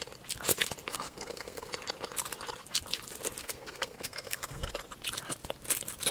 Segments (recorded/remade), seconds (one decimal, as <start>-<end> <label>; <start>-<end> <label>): 0.0-0.9 recorded; 0.9-1.7 remade; 1.7-3.4 recorded; 3.4-4.7 remade; 4.7-6.1 recorded